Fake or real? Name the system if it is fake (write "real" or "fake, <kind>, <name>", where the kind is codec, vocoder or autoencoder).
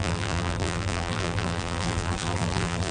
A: fake, vocoder, BigVGAN v2